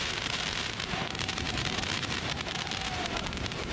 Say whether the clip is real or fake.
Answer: fake